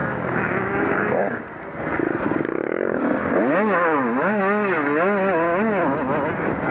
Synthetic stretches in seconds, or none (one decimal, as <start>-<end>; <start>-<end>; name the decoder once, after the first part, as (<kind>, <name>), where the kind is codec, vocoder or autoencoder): 0.0-1.4 (codec, DAC); 2.6-4.4